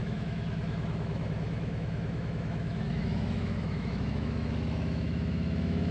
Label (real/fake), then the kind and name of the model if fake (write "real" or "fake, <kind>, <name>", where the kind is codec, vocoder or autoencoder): fake, autoencoder, DAC-VAE